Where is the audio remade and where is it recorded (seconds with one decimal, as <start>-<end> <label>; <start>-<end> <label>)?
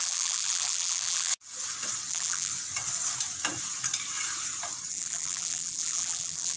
0.0-1.3 remade; 1.3-2.1 recorded; 2.1-2.5 remade; 2.5-4.9 recorded; 4.9-6.6 remade